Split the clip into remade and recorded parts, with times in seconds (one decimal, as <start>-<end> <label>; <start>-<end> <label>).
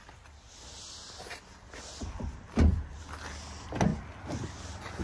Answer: 0.0-5.0 recorded